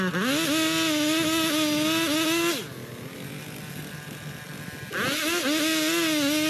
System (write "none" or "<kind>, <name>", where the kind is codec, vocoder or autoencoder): none